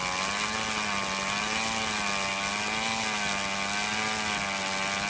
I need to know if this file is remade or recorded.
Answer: recorded